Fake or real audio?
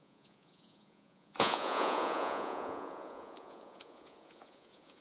fake